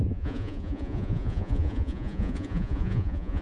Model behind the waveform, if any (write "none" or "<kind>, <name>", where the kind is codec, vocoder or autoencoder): vocoder, Vocos